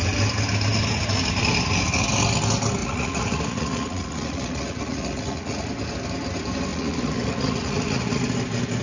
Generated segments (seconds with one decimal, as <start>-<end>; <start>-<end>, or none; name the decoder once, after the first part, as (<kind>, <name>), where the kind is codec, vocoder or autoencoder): 2.8-5.7 (vocoder, Vocos); 6.7-8.2